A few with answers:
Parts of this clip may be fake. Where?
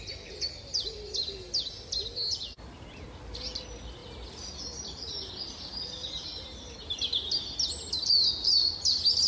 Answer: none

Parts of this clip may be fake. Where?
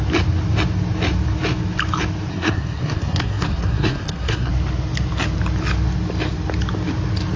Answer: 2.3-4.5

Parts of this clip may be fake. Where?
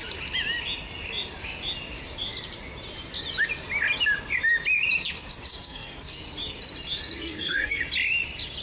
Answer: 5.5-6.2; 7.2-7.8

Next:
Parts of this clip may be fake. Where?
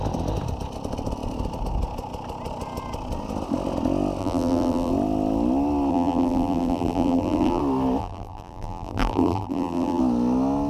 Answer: 4.2-4.9; 5.9-7.6; 8.0-10.0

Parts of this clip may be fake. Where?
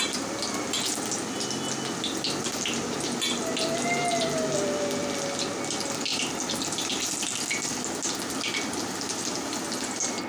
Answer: none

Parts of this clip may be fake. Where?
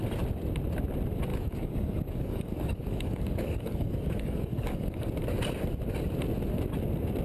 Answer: 1.3-5.1